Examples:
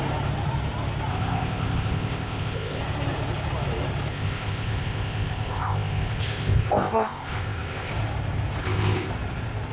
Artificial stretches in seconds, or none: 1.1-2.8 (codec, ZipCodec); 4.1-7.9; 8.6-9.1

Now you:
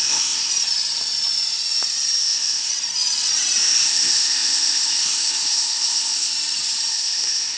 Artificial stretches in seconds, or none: 0.0-0.5 (codec, ZipCodec); 2.2-2.7; 3.6-6.3; 6.9-7.6

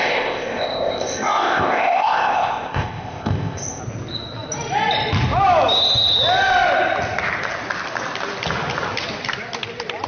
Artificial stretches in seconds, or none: 0.0-3.8 (codec, ZipCodec)

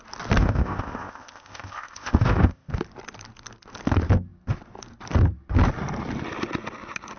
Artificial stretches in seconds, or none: 0.4-2.7 (codec, ZipCodec)

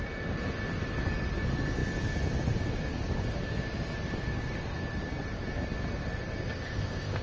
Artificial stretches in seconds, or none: 6.5-7.2 (codec, ZipCodec)

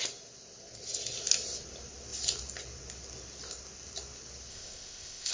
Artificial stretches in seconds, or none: 4.5-5.3 (codec, ZipCodec)

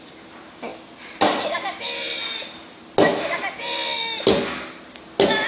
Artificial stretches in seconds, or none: none